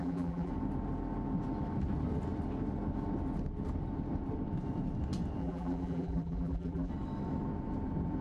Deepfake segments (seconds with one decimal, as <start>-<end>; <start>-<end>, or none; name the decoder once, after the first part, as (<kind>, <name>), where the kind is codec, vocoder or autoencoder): 0.0-0.5 (vocoder, BigVGAN v2); 5.4-6.9